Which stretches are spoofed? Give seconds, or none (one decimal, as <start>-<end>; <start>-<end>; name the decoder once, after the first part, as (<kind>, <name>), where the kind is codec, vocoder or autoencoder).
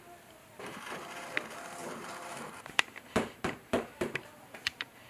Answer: 0.5-1.3 (vocoder, BigVGAN v2); 1.8-5.1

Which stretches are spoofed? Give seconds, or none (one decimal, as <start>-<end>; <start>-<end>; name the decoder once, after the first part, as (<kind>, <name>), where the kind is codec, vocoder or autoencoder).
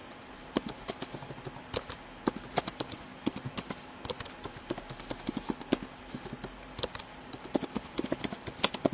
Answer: none